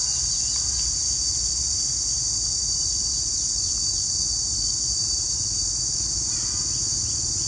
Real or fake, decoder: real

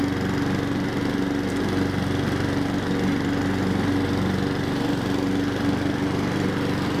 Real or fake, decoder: real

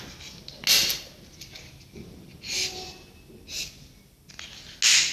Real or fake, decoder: real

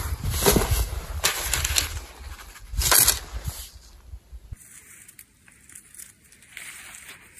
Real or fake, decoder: real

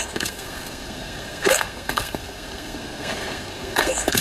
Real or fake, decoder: fake, codec, SNAC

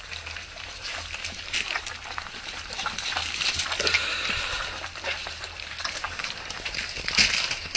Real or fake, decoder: real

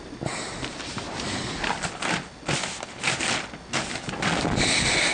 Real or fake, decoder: real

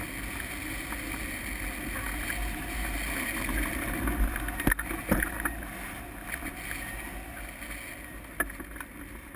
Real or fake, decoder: real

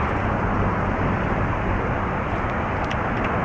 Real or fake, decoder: real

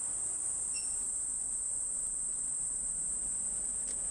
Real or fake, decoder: fake, vocoder, BigVGAN v2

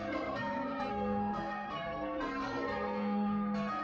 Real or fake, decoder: fake, codec, SNAC